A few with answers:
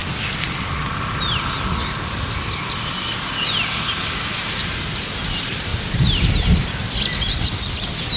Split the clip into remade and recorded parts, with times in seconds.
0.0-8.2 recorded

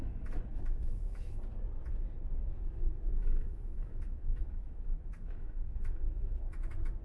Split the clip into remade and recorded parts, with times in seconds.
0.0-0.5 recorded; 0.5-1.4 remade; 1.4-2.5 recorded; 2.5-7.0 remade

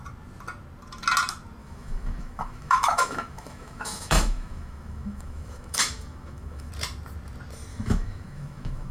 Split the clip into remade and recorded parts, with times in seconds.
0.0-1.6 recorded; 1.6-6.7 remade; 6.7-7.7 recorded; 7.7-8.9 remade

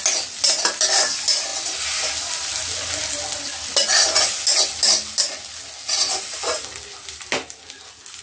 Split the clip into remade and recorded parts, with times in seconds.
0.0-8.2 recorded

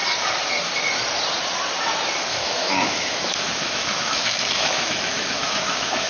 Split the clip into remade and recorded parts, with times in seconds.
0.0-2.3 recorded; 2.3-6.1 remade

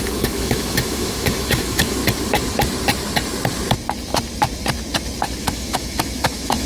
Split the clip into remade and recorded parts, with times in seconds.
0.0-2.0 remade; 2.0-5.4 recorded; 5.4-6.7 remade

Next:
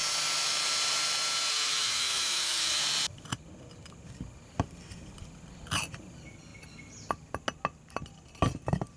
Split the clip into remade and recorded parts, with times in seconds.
0.0-1.5 recorded; 1.5-2.8 remade; 2.8-9.0 recorded

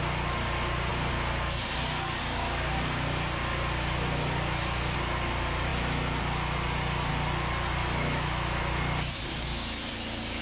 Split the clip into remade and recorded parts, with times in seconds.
0.0-7.8 recorded; 7.8-8.6 remade; 8.6-9.3 recorded; 9.3-9.9 remade; 9.9-10.4 recorded